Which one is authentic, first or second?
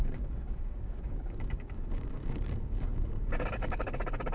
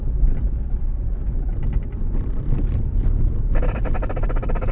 second